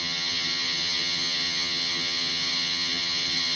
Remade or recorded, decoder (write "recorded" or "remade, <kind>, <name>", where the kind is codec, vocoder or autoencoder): remade, vocoder, HiFi-GAN